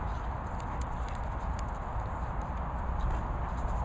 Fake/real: real